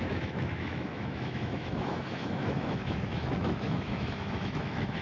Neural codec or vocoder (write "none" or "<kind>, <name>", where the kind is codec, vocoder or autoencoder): autoencoder, DAC-VAE